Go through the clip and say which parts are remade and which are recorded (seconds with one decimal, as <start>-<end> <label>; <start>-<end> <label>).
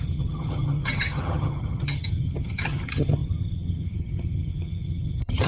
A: 0.0-5.5 remade